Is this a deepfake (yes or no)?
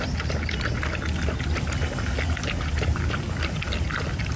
no